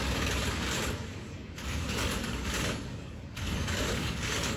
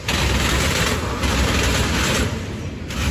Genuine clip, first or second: second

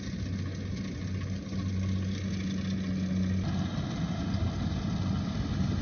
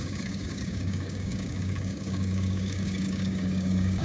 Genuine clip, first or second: first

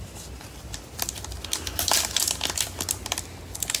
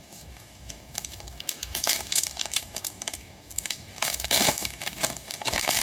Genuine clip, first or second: first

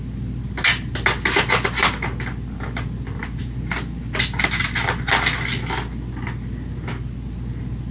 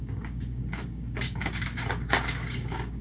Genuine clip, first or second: first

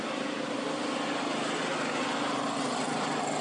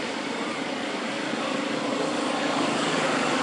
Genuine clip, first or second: first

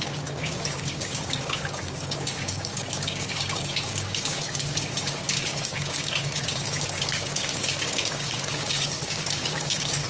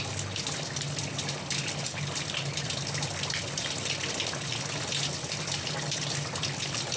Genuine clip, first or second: second